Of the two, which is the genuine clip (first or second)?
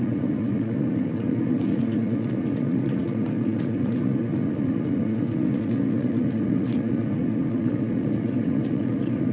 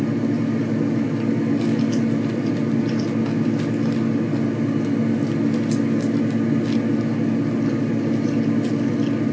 second